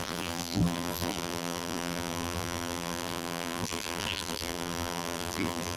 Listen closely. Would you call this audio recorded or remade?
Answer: remade